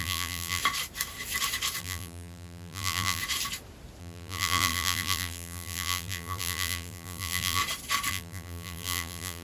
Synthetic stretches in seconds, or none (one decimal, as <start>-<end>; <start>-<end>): 0.0-0.6; 1.8-3.2; 4.0-7.6; 8.1-9.4